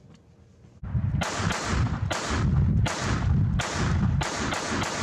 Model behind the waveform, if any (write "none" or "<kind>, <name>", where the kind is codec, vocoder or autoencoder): none